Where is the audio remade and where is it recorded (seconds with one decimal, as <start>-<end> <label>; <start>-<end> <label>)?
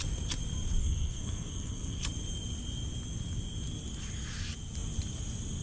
0.0-0.8 recorded; 0.8-2.0 remade; 2.0-5.6 recorded